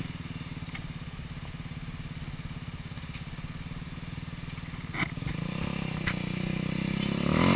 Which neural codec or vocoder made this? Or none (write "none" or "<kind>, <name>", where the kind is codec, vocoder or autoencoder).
none